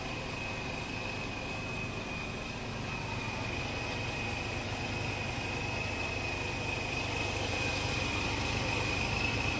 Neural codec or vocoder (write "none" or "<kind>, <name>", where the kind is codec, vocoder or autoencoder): none